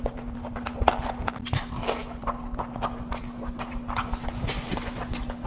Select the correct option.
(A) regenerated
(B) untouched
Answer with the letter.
B